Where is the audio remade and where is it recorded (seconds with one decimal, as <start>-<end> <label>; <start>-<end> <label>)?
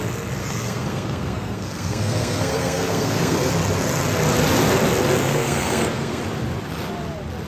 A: 0.0-0.4 recorded; 0.4-3.5 remade; 3.5-5.2 recorded; 5.2-6.2 remade; 6.2-7.5 recorded